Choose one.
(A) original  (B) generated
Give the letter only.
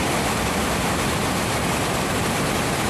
A